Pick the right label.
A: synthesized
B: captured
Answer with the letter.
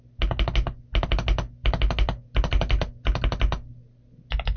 B